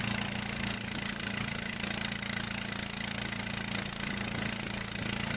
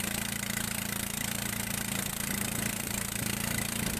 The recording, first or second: first